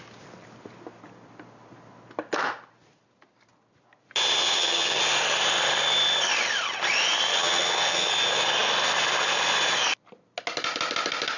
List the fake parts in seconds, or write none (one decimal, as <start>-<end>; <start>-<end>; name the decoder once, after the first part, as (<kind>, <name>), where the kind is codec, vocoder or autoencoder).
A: 4.4-5.0 (vocoder, HiFi-GAN); 7.3-8.1